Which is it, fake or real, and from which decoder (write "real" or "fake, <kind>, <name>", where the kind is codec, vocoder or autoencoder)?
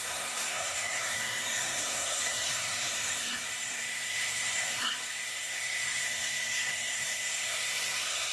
fake, codec, SNAC